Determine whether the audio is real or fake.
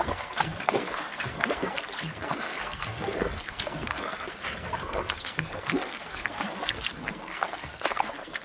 fake